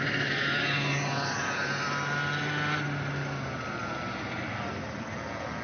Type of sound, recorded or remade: recorded